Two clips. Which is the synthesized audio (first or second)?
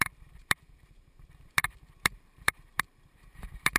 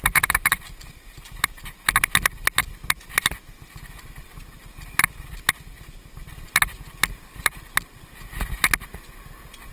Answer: first